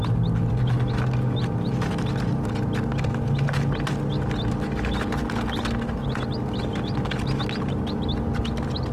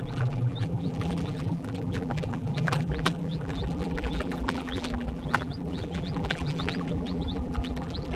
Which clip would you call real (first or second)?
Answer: first